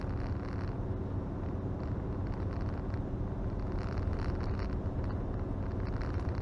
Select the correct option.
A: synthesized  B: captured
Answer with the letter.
B